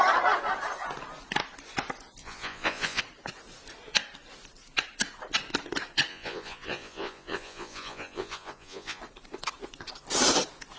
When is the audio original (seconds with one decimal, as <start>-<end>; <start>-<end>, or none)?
0.0-2.2; 3.0-6.1; 9.0-10.8